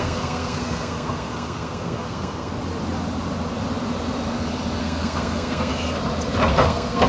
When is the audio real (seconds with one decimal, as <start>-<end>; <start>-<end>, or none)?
2.6-4.8; 5.7-6.5